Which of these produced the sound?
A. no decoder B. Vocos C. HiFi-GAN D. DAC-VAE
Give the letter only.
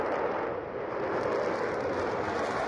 A